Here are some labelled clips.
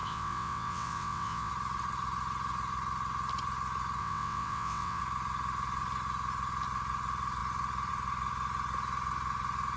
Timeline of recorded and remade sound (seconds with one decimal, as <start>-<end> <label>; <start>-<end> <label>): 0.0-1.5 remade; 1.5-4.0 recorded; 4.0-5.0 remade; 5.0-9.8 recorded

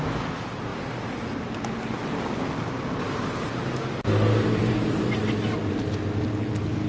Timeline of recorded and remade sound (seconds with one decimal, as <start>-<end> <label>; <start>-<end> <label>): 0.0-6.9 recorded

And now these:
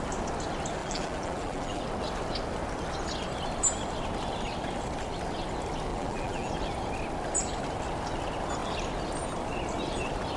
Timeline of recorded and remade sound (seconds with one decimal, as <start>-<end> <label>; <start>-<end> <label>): 0.0-0.8 recorded; 0.8-1.8 remade; 1.8-5.9 recorded; 5.9-6.5 remade; 6.5-10.4 recorded

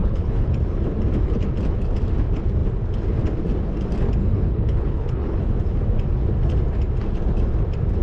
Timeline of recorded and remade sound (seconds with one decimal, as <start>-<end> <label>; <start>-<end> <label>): 0.0-0.5 remade; 0.5-4.2 recorded; 4.2-5.6 remade; 5.6-8.0 recorded